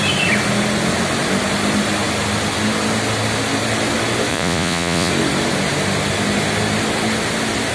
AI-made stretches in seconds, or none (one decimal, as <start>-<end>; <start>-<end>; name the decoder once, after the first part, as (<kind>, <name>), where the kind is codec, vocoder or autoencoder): 4.3-5.1 (vocoder, Vocos)